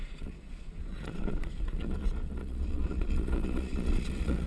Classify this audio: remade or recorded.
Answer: remade